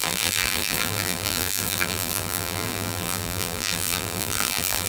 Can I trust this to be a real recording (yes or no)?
no